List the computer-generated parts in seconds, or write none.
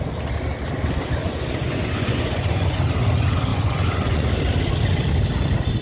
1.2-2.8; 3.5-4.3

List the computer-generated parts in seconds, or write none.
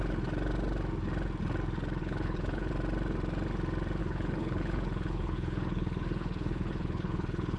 2.0-2.7; 4.0-7.6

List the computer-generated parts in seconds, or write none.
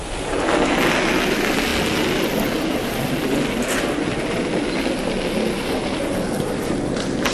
none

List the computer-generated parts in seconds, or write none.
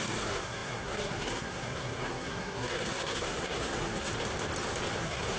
0.0-4.1; 5.0-5.4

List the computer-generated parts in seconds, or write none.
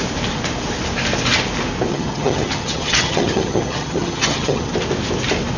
1.9-4.7